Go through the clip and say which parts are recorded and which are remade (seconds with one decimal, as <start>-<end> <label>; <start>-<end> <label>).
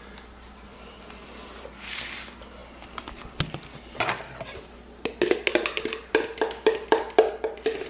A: 0.0-7.9 recorded